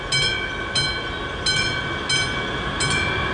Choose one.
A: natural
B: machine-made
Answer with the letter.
A